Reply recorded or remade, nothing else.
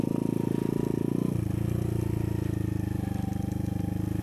recorded